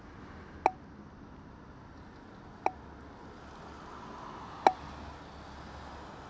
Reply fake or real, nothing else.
real